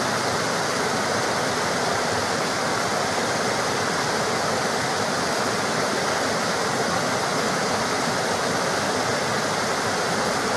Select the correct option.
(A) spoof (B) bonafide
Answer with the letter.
B